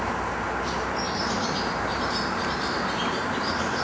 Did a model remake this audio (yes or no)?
yes